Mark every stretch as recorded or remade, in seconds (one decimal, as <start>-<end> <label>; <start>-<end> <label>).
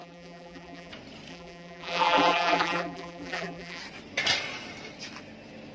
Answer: 0.0-0.9 remade; 0.9-1.3 recorded; 1.3-3.8 remade; 3.8-5.7 recorded